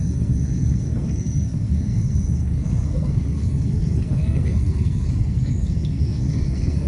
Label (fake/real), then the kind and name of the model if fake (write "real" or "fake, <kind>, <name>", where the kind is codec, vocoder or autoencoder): fake, codec, SNAC